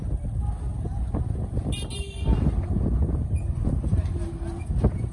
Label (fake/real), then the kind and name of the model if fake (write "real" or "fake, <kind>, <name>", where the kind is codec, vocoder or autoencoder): real